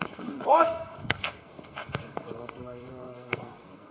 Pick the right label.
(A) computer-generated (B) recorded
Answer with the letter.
A